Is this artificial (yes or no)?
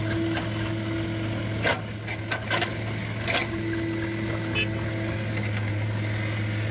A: no